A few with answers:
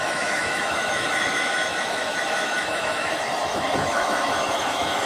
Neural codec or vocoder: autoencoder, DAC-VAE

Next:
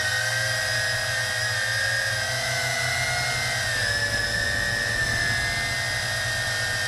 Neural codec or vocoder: none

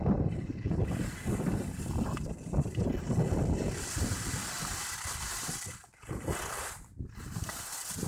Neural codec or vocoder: none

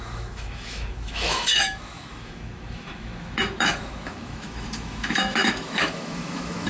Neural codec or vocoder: autoencoder, DAC-VAE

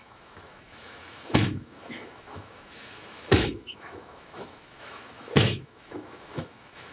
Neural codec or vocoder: autoencoder, DAC-VAE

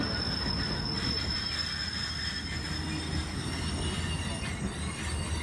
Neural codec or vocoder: none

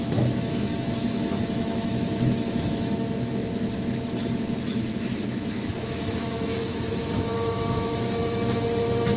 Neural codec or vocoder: autoencoder, DAC-VAE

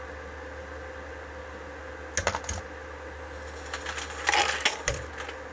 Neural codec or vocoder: none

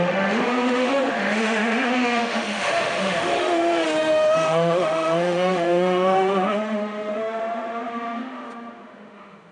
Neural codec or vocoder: autoencoder, DAC-VAE